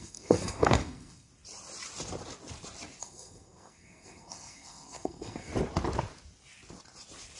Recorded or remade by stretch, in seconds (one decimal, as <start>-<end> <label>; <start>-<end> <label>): 0.0-1.3 remade; 1.3-3.0 recorded; 3.0-5.5 remade; 5.5-7.4 recorded